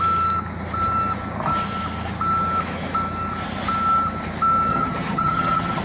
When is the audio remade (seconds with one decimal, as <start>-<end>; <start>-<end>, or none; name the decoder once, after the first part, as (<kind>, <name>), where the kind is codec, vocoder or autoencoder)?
4.7-5.8 (vocoder, HiFi-GAN)